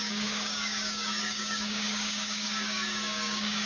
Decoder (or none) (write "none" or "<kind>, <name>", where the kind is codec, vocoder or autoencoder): codec, DAC